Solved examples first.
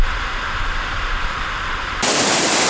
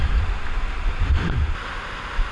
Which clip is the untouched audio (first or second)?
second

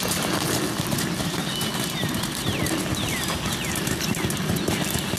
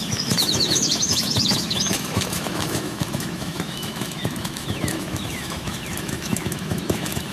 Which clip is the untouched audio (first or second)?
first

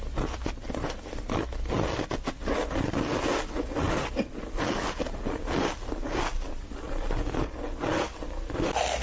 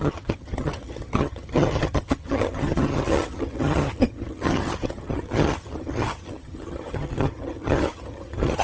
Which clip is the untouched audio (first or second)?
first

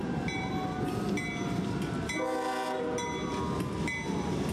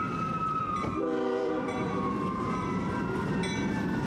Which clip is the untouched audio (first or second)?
first